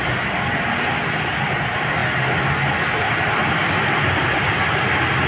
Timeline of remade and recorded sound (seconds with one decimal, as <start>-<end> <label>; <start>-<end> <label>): 0.0-5.3 recorded